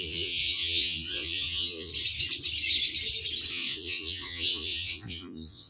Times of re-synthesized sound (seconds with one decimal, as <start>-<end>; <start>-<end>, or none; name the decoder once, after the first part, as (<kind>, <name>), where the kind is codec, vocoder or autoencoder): 0.0-1.9 (vocoder, Vocos); 3.5-5.7